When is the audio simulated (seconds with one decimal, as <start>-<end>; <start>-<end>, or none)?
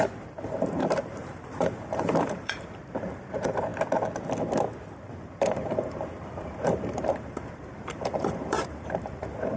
0.0-3.7; 5.0-9.6